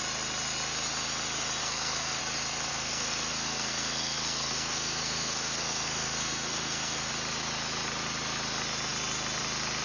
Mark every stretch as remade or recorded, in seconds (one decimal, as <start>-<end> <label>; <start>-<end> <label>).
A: 0.0-1.6 recorded; 1.6-2.2 remade; 2.2-2.7 recorded; 2.7-7.1 remade; 7.1-9.8 recorded